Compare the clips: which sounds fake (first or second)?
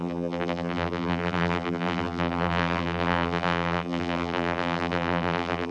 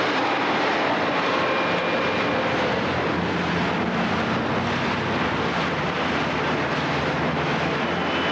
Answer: first